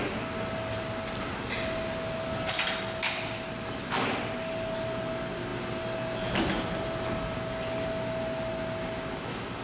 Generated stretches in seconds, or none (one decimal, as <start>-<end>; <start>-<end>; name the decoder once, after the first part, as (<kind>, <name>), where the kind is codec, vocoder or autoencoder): none